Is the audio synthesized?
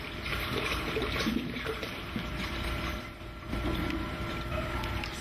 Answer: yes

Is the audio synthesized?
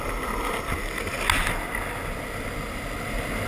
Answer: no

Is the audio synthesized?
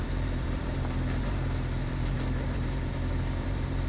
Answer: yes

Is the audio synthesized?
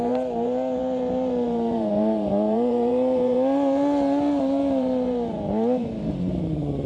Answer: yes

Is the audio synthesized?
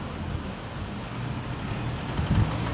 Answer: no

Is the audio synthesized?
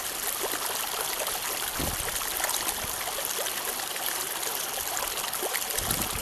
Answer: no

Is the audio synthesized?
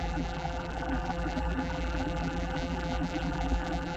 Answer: yes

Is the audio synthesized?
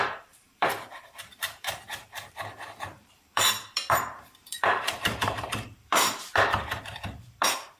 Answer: yes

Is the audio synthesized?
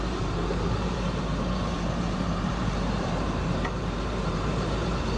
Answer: yes